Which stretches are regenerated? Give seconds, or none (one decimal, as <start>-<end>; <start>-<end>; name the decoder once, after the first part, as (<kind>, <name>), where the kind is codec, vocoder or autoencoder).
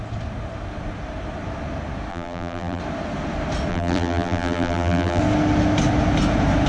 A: 2.1-2.8 (vocoder, BigVGAN v2); 3.7-5.2